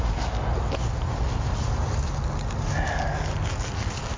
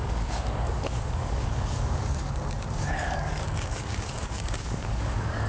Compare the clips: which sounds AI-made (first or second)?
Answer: second